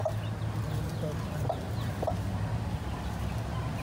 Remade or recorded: recorded